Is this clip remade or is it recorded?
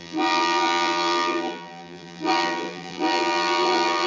remade